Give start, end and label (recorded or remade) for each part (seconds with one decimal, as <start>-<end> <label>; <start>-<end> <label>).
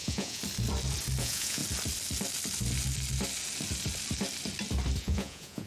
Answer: 0.0-0.4 remade; 0.4-1.2 recorded; 1.2-1.6 remade; 1.6-5.0 recorded; 5.0-5.7 remade